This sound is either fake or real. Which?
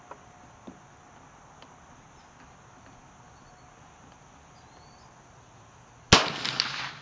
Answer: real